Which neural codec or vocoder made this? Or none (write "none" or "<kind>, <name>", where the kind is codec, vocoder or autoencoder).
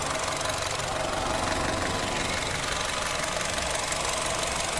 none